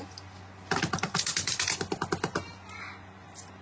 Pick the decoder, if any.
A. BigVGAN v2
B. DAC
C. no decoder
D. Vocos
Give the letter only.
C